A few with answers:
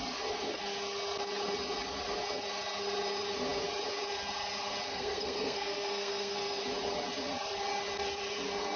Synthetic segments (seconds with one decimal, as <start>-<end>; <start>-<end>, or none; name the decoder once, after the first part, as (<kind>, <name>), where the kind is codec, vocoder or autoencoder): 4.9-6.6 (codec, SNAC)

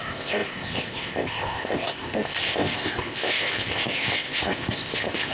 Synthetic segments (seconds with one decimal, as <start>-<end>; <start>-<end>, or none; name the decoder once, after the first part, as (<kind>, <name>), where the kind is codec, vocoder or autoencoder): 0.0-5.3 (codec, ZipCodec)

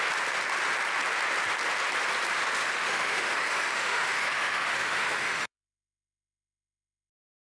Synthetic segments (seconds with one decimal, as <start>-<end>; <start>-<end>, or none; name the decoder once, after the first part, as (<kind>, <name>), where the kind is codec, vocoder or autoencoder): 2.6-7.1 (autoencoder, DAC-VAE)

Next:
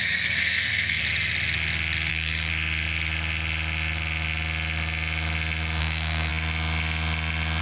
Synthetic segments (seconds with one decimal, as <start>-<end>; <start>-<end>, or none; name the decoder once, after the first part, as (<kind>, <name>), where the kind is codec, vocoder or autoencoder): 0.0-1.0 (codec, SNAC); 2.1-2.5; 5.8-6.3